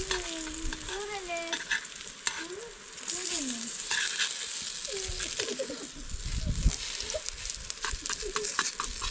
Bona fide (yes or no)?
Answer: yes